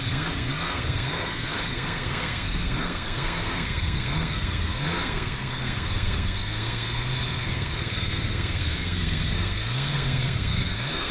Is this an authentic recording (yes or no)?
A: no